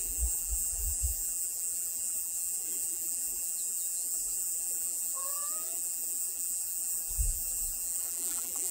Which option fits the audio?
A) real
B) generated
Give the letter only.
B